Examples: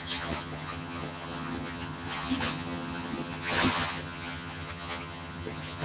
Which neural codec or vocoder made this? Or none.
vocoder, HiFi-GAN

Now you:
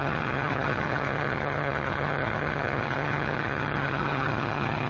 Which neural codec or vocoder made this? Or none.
vocoder, HiFi-GAN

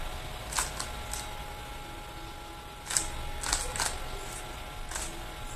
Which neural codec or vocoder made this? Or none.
none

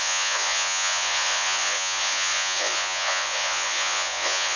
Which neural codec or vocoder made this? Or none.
vocoder, Vocos